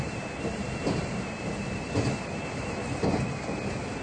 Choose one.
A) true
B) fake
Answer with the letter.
A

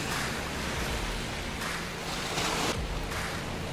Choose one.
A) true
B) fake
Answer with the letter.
A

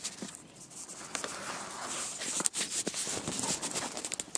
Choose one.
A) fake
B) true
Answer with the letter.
B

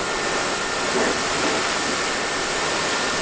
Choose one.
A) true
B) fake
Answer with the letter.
B